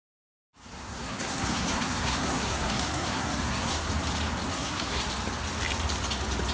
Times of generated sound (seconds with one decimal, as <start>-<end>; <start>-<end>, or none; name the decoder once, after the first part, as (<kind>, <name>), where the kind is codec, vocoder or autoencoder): 0.0-3.9 (codec, SNAC); 4.5-5.1